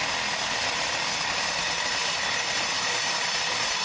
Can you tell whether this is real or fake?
real